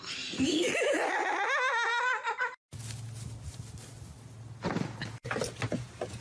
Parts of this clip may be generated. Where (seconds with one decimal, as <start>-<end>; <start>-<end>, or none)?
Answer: none